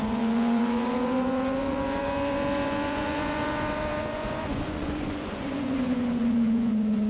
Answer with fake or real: fake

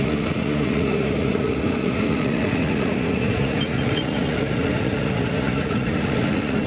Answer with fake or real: fake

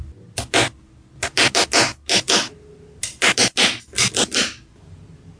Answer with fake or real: real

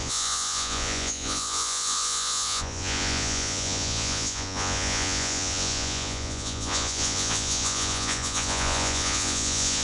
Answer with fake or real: fake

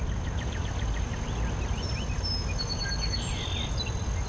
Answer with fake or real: real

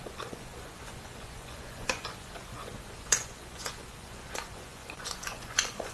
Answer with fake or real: fake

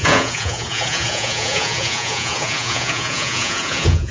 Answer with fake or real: fake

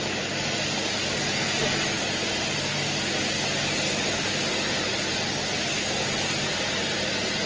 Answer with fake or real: real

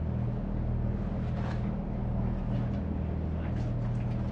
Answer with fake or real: real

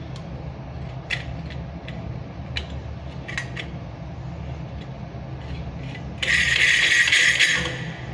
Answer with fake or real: real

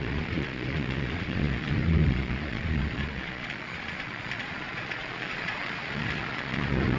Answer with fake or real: fake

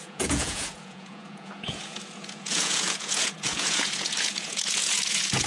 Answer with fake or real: fake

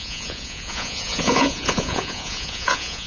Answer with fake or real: fake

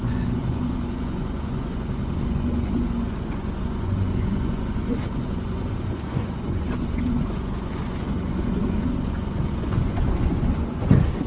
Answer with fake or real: fake